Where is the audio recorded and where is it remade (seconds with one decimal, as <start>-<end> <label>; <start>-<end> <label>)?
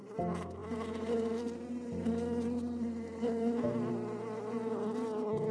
0.0-5.5 recorded